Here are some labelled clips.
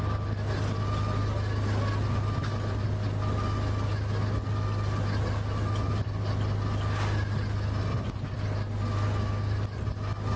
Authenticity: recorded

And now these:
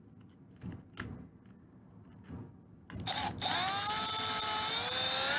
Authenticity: recorded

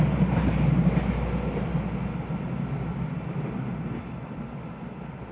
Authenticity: recorded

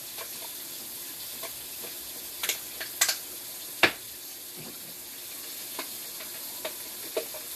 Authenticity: recorded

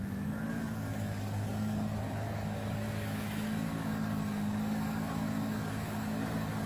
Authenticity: remade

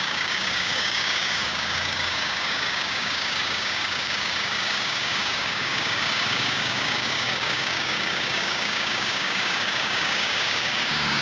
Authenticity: remade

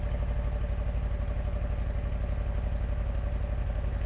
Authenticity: recorded